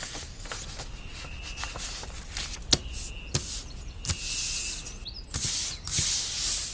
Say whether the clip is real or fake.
real